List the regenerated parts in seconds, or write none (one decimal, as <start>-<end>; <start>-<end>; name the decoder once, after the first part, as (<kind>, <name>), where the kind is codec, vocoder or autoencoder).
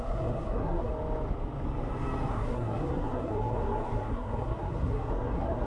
0.0-0.9 (codec, SNAC); 2.3-5.7